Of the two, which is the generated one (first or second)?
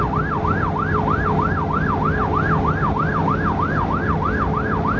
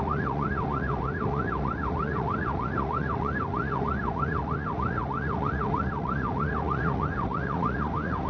second